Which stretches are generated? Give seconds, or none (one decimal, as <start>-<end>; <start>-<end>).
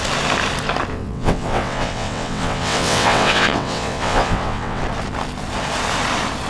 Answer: 0.9-4.8